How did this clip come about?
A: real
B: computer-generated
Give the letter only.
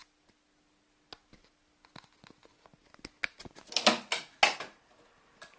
A